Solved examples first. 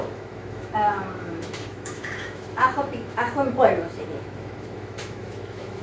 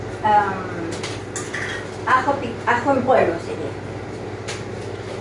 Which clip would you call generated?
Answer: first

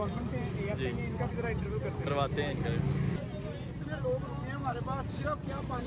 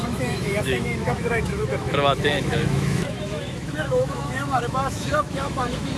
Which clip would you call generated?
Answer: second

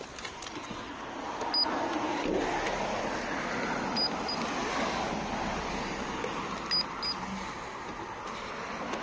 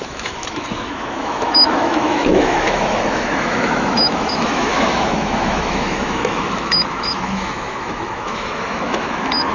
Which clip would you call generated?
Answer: second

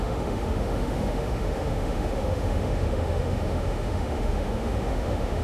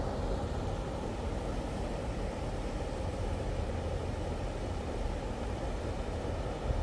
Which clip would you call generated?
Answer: first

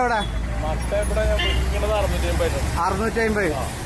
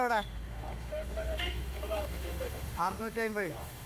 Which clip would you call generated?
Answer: second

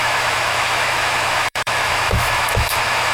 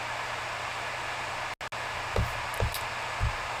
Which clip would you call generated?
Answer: first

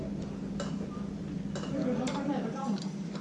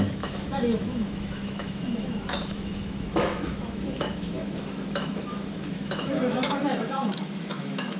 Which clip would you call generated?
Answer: second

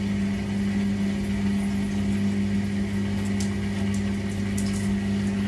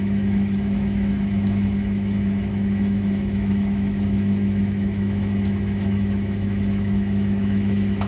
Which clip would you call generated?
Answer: second